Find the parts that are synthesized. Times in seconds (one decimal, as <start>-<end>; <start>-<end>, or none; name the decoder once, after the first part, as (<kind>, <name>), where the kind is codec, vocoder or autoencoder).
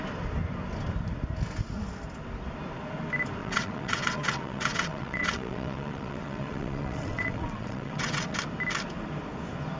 3.4-8.4 (vocoder, WaveNeXt)